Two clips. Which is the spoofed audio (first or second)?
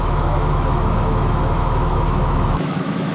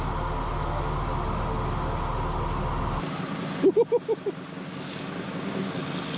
first